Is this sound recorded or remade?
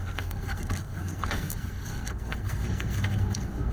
remade